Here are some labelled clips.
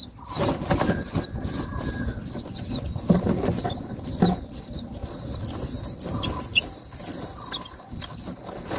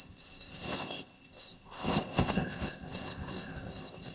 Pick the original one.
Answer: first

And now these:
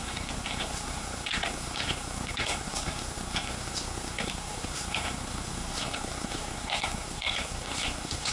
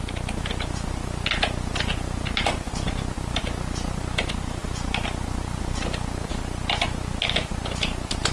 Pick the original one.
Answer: second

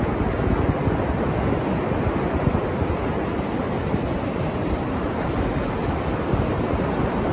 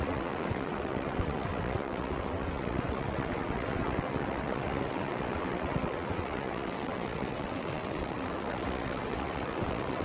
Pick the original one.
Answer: first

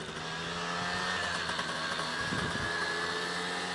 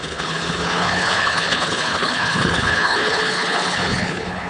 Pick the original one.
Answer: first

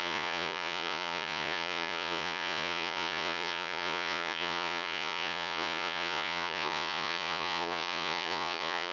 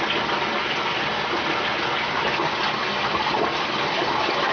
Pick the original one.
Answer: second